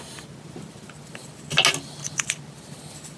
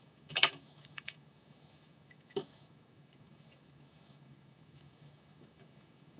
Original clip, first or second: first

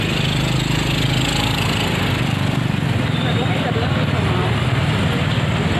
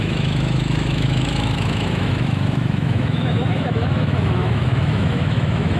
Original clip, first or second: first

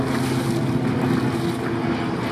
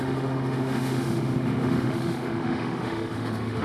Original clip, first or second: first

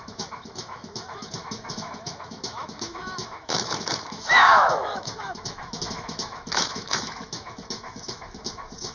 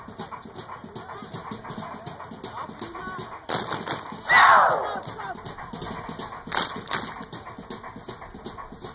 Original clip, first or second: second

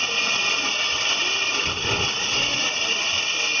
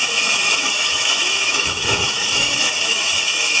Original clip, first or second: first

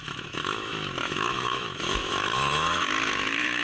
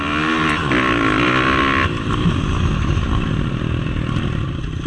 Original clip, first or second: second